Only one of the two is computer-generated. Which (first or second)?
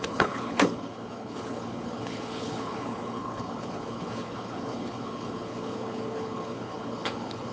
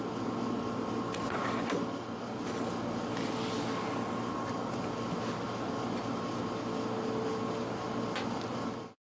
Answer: first